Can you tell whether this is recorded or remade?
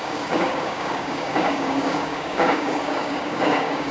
remade